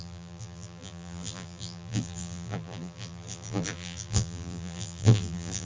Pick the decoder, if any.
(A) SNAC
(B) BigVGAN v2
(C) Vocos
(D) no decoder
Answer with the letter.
B